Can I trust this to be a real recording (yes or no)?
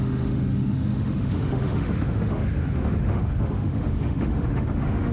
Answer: no